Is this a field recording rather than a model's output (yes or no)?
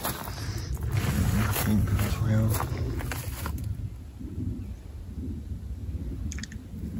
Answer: yes